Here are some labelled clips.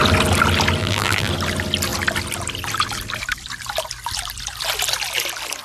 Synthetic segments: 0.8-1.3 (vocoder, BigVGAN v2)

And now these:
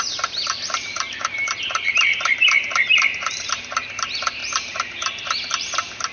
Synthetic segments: 0.0-4.4 (vocoder, BigVGAN v2); 5.5-6.1

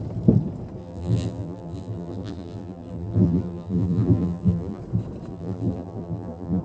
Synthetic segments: 0.8-4.8 (vocoder, BigVGAN v2); 5.3-6.6